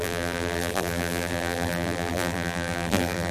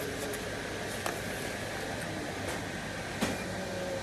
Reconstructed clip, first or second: first